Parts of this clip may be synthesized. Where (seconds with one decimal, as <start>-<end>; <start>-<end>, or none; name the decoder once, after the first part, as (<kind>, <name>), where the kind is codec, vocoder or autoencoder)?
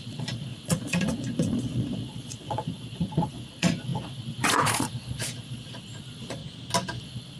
0.0-6.4 (vocoder, Vocos); 7.0-7.4